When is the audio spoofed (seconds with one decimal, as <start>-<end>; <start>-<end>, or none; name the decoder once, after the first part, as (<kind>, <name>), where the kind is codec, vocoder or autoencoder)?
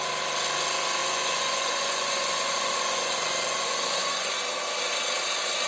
1.0-4.4 (vocoder, Vocos)